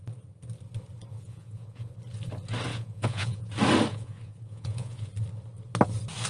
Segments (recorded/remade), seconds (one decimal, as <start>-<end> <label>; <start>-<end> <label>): 0.0-1.1 recorded; 1.1-1.9 remade; 1.9-2.7 recorded; 2.7-3.5 remade; 3.5-3.9 recorded; 3.9-5.1 remade; 5.1-6.3 recorded